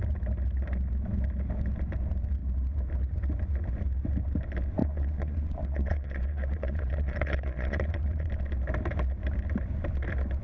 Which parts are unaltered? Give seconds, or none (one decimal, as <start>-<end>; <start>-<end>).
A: 0.0-4.8; 8.3-10.4